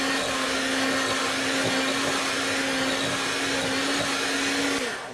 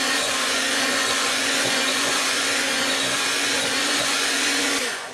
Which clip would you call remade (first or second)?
second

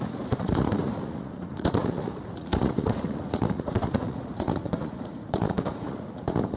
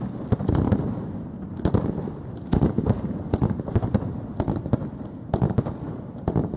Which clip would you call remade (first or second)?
first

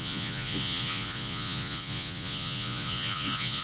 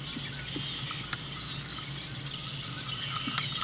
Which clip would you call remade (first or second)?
first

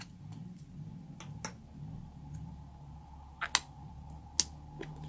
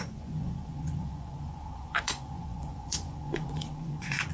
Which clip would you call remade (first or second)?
second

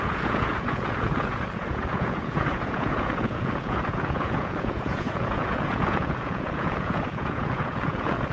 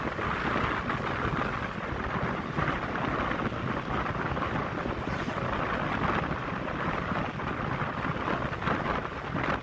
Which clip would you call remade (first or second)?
first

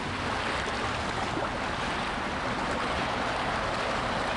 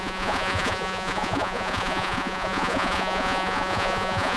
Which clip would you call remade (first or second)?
second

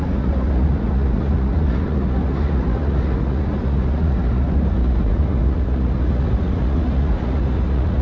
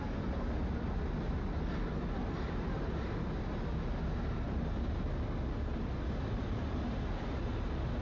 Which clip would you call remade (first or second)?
first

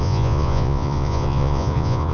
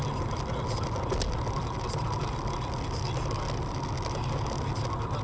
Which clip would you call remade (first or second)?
first